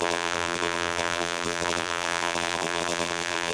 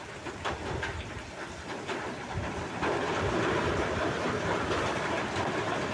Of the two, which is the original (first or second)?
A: second